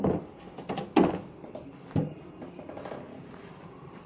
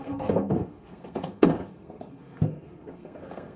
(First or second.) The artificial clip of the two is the second